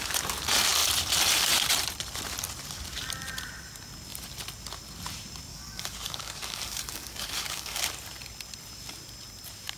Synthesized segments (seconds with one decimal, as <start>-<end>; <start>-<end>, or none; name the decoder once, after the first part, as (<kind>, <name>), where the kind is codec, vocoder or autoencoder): 5.5-7.8 (codec, DAC)